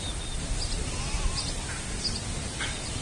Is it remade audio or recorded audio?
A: recorded